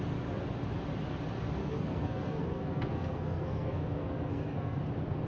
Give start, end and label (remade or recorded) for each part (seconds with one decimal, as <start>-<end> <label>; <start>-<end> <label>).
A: 0.0-1.6 recorded; 1.6-4.8 remade; 4.8-5.3 recorded